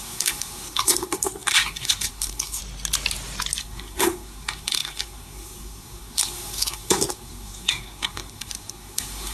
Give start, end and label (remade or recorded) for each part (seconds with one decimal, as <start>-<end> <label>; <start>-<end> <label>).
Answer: 0.0-2.6 remade; 2.6-3.6 recorded; 3.6-9.3 remade